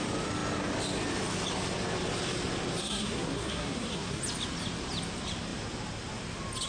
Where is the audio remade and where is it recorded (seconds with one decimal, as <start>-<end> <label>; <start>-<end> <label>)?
0.0-2.8 recorded; 2.8-4.2 remade; 4.2-6.7 recorded